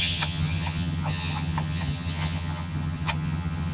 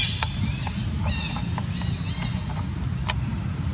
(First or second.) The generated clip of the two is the first